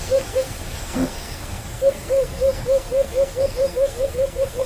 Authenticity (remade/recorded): remade